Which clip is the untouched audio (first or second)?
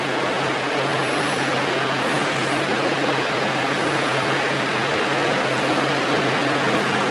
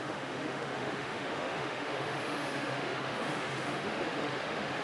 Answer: first